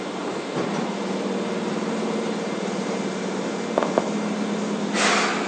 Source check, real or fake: real